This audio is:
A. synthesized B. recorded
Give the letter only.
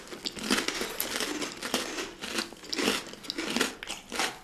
B